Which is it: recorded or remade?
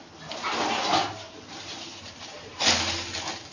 recorded